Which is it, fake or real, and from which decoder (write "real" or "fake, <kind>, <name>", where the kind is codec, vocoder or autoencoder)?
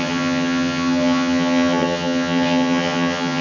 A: fake, vocoder, HiFi-GAN